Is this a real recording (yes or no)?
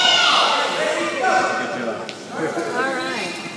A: yes